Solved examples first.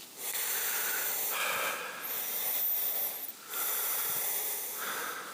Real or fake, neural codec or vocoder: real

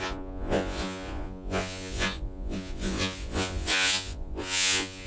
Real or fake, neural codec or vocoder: fake, vocoder, Vocos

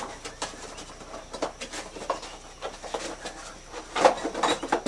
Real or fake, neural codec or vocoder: real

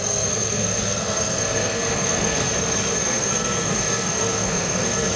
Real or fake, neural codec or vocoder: fake, codec, SNAC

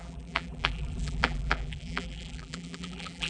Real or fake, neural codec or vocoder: fake, vocoder, BigVGAN v2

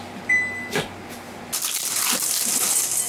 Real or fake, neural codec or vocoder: real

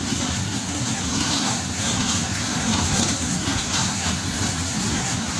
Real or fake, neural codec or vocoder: fake, codec, SNAC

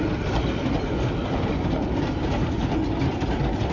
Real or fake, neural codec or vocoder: real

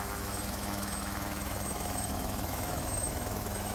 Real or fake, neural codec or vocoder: fake, autoencoder, DAC-VAE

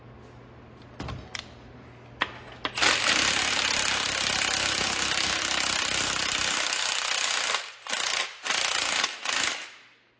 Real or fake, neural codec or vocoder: real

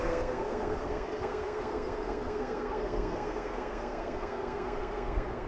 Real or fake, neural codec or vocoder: fake, codec, SNAC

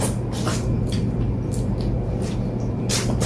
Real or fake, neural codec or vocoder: real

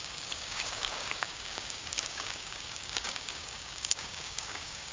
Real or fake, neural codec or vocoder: fake, codec, DAC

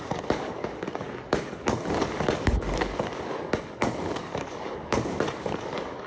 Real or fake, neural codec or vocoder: fake, codec, DAC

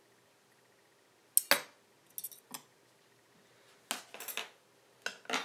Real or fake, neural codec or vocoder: real